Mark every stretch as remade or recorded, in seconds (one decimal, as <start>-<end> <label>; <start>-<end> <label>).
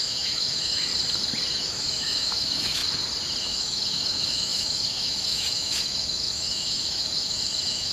0.0-0.9 remade; 0.9-1.5 recorded; 1.5-2.8 remade; 2.8-3.4 recorded; 3.4-7.9 remade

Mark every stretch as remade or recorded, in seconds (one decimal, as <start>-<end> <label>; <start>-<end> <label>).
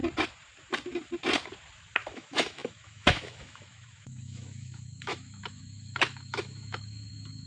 0.0-2.1 recorded; 2.1-7.5 remade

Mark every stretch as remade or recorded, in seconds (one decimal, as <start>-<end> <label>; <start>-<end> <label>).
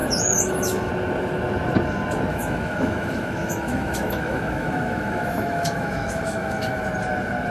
0.0-0.9 remade; 0.9-2.3 recorded; 2.3-6.8 remade; 6.8-7.5 recorded